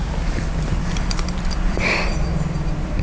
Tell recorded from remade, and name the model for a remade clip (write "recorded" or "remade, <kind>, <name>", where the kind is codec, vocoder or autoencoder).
recorded